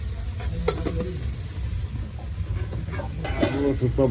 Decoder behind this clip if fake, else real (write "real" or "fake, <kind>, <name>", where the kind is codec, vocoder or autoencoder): real